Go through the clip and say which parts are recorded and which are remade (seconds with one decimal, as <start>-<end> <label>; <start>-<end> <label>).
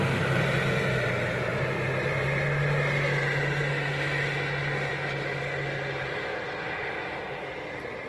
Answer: 0.0-8.1 recorded